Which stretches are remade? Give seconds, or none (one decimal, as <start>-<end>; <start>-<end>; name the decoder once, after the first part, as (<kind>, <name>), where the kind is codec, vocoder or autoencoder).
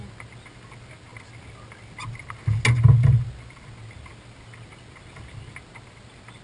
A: none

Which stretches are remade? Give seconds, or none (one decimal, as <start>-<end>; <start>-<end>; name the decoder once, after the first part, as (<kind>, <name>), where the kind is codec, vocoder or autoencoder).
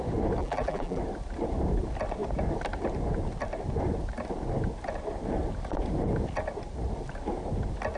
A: 0.4-1.0 (vocoder, BigVGAN v2)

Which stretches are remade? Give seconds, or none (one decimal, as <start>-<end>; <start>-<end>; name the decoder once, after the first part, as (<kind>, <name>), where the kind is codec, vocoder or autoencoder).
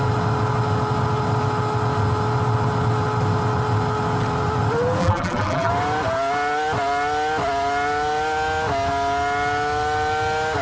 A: 5.0-5.7 (vocoder, BigVGAN v2)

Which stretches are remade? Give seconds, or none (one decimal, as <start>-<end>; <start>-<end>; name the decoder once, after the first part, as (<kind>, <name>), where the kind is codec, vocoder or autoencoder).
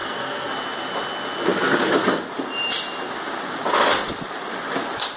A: 0.0-0.5 (codec, SNAC)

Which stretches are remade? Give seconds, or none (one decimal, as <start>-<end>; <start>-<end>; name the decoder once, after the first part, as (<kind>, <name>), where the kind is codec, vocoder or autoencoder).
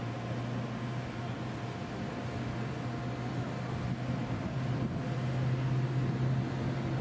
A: 4.2-4.8 (vocoder, BigVGAN v2)